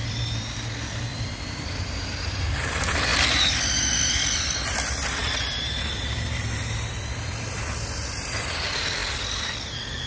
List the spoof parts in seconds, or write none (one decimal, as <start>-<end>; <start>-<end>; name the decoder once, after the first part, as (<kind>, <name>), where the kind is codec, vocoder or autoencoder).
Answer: 0.0-3.1 (vocoder, BigVGAN v2); 3.9-10.1